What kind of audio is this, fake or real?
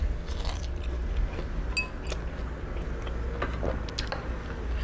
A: real